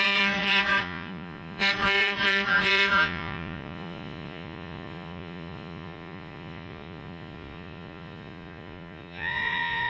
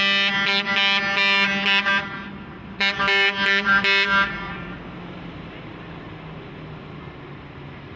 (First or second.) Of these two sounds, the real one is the second